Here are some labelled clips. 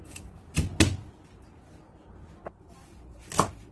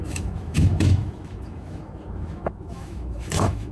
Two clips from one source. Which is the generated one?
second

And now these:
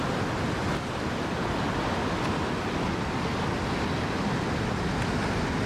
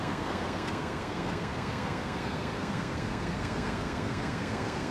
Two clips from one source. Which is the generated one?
second